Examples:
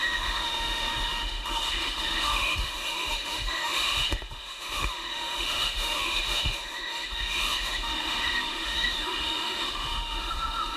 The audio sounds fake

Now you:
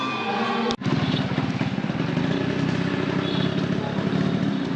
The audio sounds real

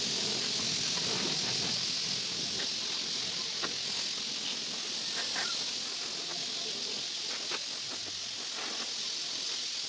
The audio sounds real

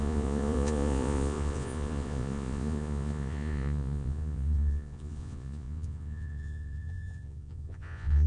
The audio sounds fake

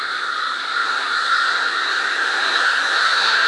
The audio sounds fake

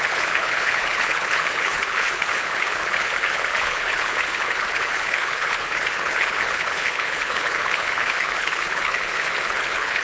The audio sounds fake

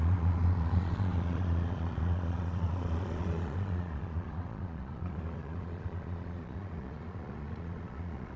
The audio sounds fake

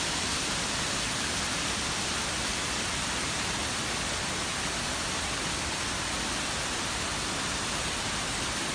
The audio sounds real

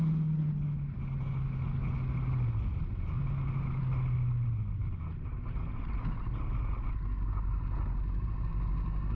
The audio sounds real